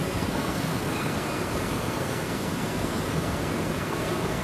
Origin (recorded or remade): remade